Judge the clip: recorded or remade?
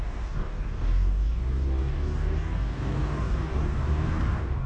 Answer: remade